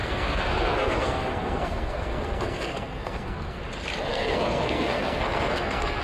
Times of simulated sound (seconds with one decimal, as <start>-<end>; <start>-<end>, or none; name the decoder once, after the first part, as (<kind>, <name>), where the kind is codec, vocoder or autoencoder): 0.0-3.6 (codec, SNAC); 4.1-6.0